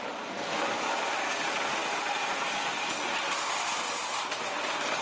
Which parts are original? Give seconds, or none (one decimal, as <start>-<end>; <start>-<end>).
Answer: 0.0-5.0